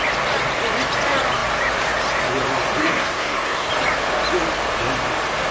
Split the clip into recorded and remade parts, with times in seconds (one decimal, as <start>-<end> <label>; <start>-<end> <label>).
0.0-2.8 recorded; 2.8-3.7 remade; 3.7-5.5 recorded